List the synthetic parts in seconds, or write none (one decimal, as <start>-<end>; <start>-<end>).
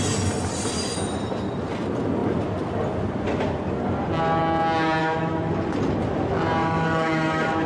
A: 5.0-5.5; 6.6-7.7